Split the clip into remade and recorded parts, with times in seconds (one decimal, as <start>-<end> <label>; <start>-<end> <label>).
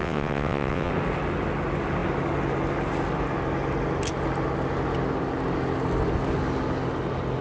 0.0-0.9 remade; 0.9-7.4 recorded